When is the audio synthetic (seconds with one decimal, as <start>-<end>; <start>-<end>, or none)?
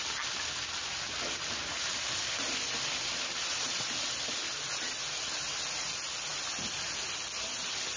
none